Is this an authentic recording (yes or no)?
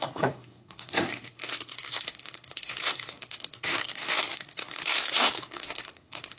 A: no